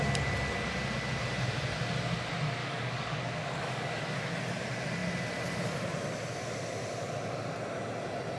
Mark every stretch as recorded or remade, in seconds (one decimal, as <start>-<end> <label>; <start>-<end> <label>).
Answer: 0.0-2.6 recorded; 2.6-4.0 remade; 4.0-8.4 recorded